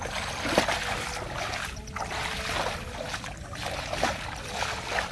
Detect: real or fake real